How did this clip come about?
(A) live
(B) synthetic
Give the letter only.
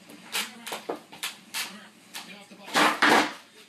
B